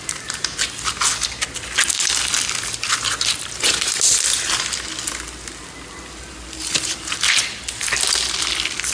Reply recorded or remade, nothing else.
recorded